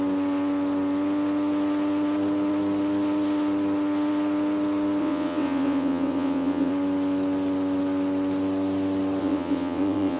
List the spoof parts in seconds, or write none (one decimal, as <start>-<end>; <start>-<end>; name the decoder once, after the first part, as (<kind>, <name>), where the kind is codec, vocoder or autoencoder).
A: 5.0-6.7 (vocoder, WaveNeXt); 9.2-10.2